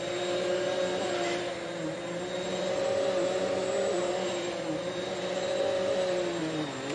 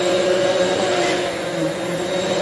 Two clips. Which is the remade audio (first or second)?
second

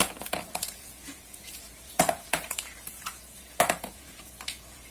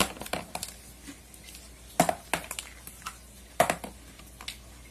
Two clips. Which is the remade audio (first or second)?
first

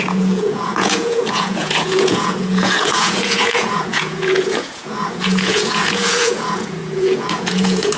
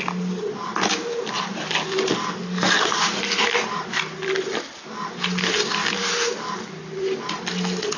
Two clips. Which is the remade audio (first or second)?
first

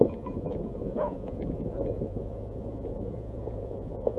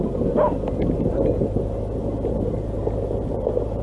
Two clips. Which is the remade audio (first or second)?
first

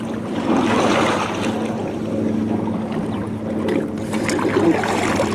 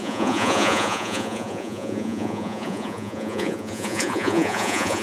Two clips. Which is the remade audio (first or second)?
second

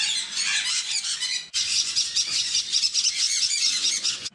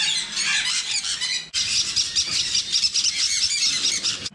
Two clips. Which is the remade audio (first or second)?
first